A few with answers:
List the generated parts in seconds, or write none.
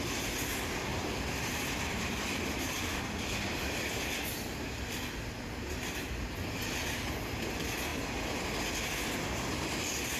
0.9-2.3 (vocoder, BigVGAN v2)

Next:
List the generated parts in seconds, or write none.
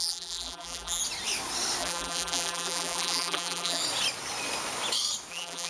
0.0-1.0 (vocoder, BigVGAN v2); 1.8-3.8; 5.3-5.7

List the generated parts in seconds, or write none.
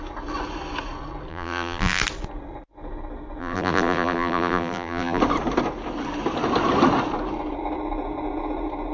1.3-2.0 (vocoder, BigVGAN v2); 3.4-5.2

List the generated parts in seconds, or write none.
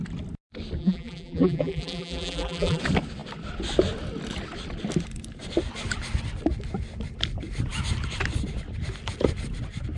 0.8-2.8 (vocoder, BigVGAN v2)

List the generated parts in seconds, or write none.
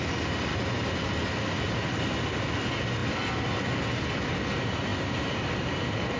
4.9-6.2 (vocoder, BigVGAN v2)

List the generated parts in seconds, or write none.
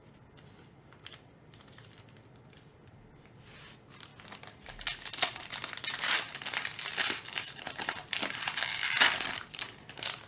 0.0-4.1 (vocoder, BigVGAN v2); 7.5-10.3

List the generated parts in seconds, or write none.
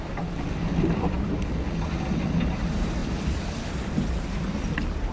0.6-1.2 (vocoder, BigVGAN v2); 3.0-4.3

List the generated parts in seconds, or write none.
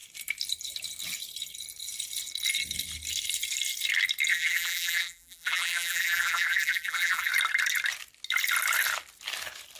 4.3-7.3 (vocoder, BigVGAN v2)